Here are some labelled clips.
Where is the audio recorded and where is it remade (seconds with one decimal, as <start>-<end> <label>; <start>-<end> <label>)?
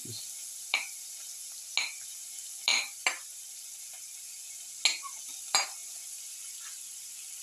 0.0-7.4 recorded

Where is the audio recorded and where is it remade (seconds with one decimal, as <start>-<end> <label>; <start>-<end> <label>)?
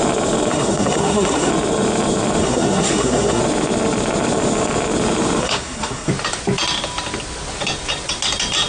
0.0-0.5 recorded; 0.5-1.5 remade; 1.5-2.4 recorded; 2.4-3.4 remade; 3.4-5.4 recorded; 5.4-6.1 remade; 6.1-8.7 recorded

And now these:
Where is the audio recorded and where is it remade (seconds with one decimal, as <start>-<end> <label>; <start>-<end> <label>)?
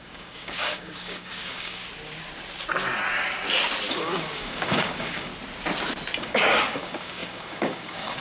0.0-1.8 remade; 1.8-3.9 recorded; 3.9-5.3 remade; 5.3-6.2 recorded; 6.2-8.2 remade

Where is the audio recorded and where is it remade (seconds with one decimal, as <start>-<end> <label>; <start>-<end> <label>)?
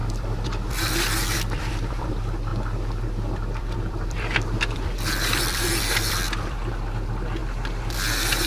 0.0-2.1 remade; 2.1-2.5 recorded; 2.5-6.7 remade; 6.7-7.4 recorded; 7.4-8.5 remade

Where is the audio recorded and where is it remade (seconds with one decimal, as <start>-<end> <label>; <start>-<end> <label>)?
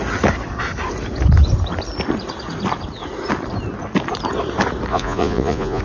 0.0-4.9 recorded; 4.9-5.8 remade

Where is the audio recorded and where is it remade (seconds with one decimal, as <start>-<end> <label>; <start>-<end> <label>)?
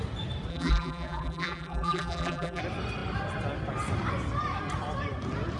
0.0-0.5 recorded; 0.5-2.6 remade; 2.6-5.6 recorded